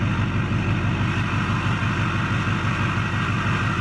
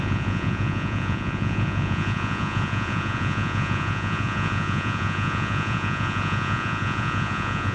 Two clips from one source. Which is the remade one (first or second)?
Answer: second